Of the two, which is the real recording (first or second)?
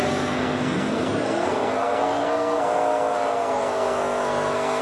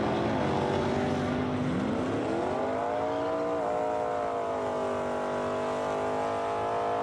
second